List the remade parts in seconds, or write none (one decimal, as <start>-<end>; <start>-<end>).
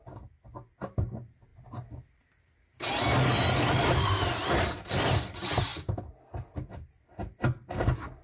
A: none